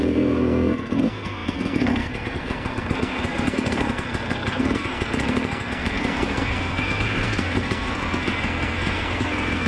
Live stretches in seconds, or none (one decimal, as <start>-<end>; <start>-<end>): none